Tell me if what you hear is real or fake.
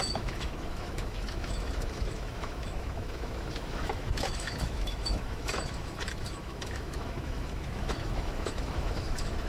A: fake